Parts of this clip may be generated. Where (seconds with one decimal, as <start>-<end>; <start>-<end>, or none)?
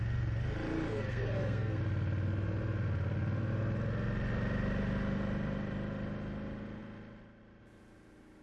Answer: 0.9-1.8